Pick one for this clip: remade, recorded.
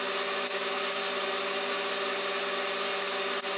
recorded